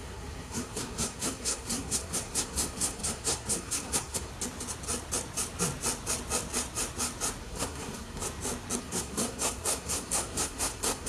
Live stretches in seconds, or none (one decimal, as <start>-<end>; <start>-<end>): 4.3-7.4; 8.2-8.8